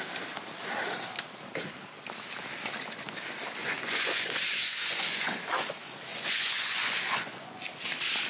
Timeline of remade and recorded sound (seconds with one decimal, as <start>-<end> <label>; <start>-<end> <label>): 0.0-3.6 recorded; 3.6-5.4 remade; 5.4-6.1 recorded; 6.1-7.6 remade; 7.6-8.3 recorded